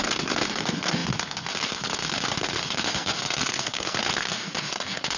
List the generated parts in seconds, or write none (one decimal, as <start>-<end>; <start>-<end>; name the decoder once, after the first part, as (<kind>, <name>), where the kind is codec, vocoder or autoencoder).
0.0-5.2 (codec, SNAC)